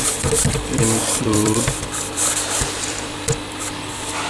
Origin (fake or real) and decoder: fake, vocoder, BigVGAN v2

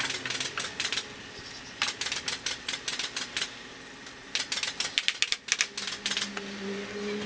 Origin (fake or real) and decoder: real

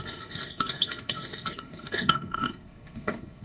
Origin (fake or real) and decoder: fake, codec, SNAC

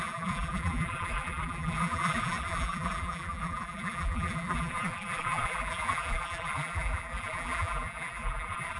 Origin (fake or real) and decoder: fake, vocoder, BigVGAN v2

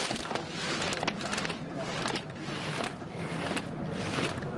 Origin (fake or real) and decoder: real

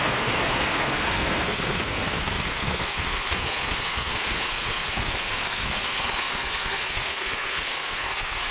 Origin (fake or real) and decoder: fake, codec, SNAC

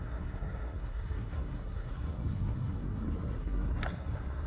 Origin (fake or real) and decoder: fake, codec, SNAC